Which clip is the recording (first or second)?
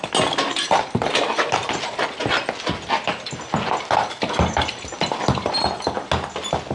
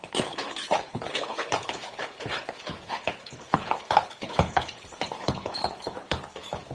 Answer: first